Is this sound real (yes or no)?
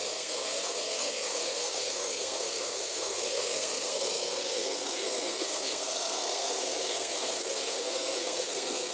no